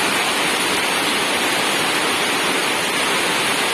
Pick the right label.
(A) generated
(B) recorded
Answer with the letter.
B